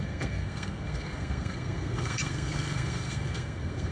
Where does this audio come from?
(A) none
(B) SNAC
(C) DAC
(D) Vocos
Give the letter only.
B